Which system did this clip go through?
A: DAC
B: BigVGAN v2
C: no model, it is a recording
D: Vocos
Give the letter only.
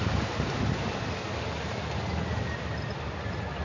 C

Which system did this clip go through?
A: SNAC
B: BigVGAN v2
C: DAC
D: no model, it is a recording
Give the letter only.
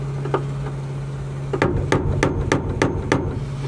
D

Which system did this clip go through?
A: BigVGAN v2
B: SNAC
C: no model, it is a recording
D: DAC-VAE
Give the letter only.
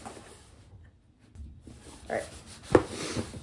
C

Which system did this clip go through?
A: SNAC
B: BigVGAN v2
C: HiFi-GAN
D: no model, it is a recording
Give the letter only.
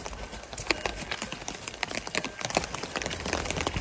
D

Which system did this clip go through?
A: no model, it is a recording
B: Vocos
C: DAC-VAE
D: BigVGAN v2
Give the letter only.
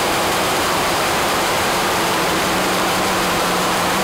D